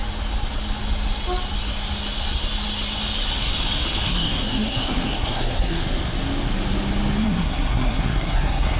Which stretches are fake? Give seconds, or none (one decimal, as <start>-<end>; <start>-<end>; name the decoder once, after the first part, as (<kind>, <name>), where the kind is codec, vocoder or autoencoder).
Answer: 4.1-5.8 (codec, SNAC); 7.2-8.8